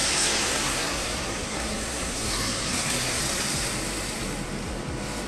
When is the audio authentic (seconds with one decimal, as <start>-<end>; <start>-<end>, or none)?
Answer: 3.2-5.3